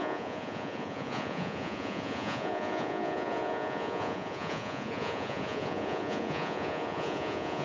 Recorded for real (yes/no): no